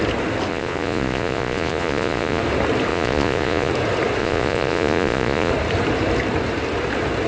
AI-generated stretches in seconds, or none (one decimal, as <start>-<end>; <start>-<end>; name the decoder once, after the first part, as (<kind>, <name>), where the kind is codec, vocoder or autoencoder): 0.5-2.4 (vocoder, Vocos); 2.9-3.7; 4.2-5.5